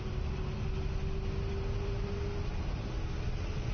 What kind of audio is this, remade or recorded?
recorded